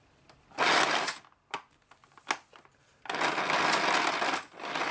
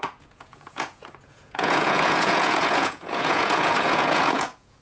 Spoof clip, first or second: second